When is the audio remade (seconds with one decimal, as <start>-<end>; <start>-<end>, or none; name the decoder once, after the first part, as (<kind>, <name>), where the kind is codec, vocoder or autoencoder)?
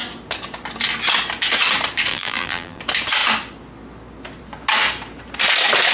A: 2.1-2.8 (vocoder, BigVGAN v2)